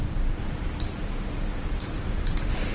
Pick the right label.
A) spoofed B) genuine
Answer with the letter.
A